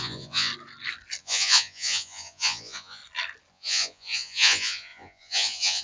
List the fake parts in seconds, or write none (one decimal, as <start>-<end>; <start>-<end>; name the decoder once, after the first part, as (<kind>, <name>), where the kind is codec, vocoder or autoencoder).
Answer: 0.0-0.5 (vocoder, Vocos); 1.2-3.0; 3.5-5.8